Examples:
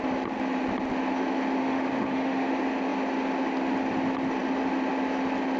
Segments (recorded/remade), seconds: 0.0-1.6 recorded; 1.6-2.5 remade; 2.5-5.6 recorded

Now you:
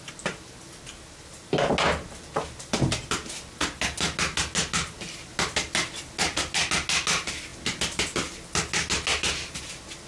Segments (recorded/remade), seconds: 0.0-10.1 recorded

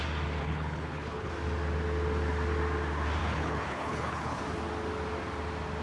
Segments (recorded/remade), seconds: 0.0-0.4 recorded; 0.4-1.3 remade; 1.3-3.2 recorded; 3.2-4.4 remade; 4.4-5.8 recorded

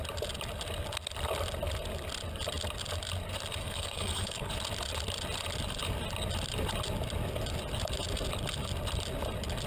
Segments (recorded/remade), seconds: 0.0-3.6 recorded; 3.6-4.5 remade; 4.5-9.7 recorded

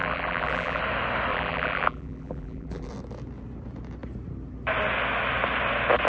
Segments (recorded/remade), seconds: 0.0-0.8 remade; 0.8-1.3 recorded; 1.3-2.9 remade; 2.9-6.1 recorded

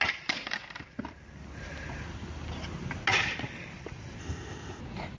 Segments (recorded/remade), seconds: 0.0-4.2 recorded; 4.2-4.8 remade; 4.8-5.2 recorded

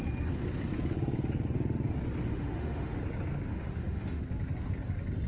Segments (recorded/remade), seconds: 0.0-2.2 recorded; 2.2-3.0 remade; 3.0-3.5 recorded; 3.5-4.2 remade; 4.2-5.3 recorded

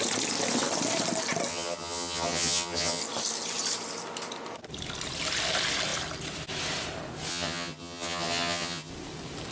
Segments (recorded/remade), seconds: 0.0-1.5 recorded; 1.5-3.0 remade; 3.0-7.3 recorded; 7.3-8.9 remade; 8.9-9.5 recorded